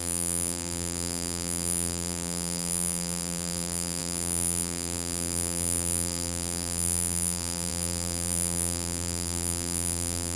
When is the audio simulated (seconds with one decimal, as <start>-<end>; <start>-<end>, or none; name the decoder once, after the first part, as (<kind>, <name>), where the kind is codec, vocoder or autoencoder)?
0.0-10.4 (vocoder, BigVGAN v2)